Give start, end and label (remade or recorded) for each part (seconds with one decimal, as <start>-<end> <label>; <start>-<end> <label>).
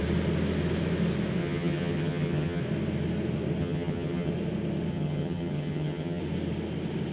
0.0-1.4 recorded; 1.4-2.6 remade; 2.6-3.6 recorded; 3.6-4.3 remade; 4.3-4.9 recorded; 4.9-6.2 remade; 6.2-7.1 recorded